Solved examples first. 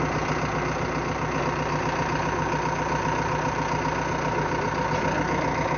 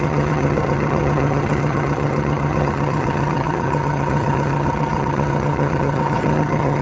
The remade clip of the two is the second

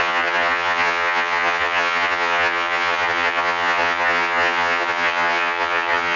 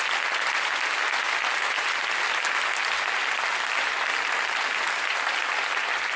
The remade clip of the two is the first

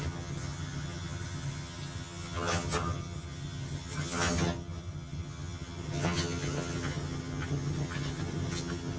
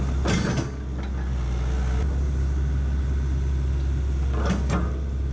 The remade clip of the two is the first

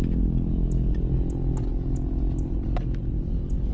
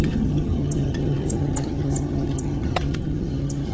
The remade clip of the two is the second